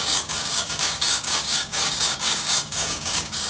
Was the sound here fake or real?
fake